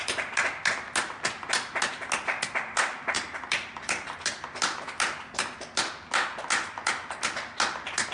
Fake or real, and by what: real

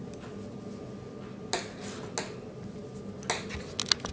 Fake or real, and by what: real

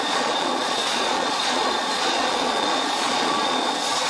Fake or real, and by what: fake, vocoder, Vocos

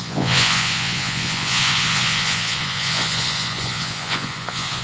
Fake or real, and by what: fake, vocoder, Vocos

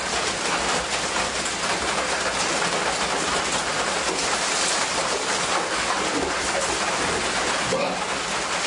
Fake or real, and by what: real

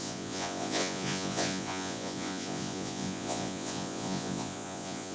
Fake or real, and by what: fake, vocoder, Vocos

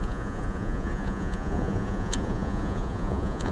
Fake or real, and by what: fake, vocoder, Vocos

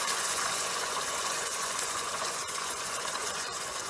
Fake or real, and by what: fake, vocoder, Vocos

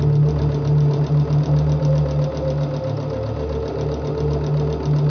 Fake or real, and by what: real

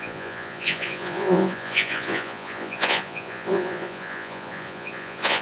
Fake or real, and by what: fake, vocoder, Vocos